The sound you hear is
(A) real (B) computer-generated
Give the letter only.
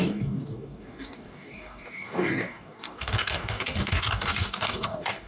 B